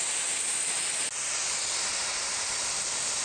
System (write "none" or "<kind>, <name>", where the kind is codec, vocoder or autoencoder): none